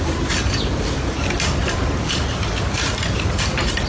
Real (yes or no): yes